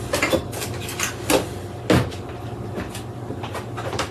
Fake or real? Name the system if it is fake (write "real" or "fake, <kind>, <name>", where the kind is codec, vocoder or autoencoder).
real